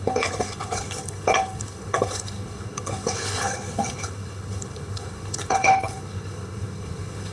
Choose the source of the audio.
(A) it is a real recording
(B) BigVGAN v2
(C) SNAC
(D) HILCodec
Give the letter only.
D